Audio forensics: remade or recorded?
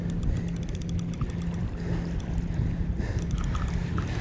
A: recorded